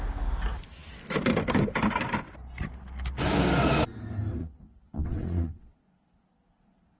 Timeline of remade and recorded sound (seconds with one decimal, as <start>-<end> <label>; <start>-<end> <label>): 0.0-4.4 recorded; 4.4-5.8 remade; 5.8-7.0 recorded